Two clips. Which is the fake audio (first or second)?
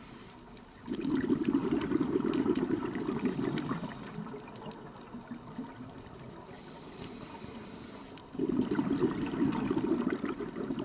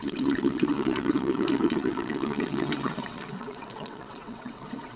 second